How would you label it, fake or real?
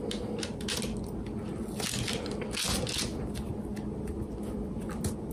real